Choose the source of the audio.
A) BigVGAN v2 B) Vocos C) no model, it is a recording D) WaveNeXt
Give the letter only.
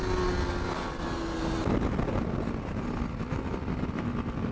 C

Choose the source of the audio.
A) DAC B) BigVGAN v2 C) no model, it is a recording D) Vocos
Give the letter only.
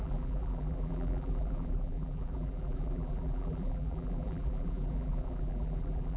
B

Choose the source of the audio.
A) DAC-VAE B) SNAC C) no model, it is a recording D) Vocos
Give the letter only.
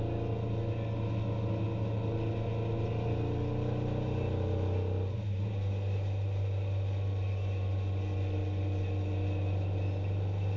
C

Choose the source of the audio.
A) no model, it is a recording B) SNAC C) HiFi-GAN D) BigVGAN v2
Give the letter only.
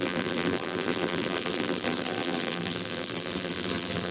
D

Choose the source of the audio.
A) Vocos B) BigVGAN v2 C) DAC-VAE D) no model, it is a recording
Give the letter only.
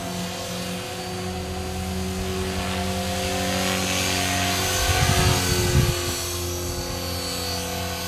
D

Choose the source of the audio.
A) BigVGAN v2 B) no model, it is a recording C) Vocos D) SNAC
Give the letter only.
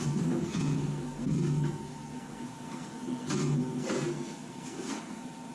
D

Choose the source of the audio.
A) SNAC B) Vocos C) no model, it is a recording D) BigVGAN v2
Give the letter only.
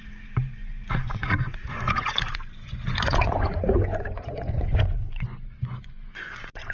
B